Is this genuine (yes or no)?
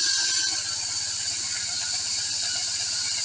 yes